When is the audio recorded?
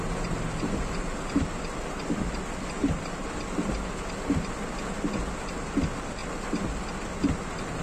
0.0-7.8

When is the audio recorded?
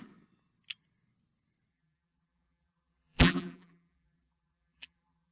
0.0-1.7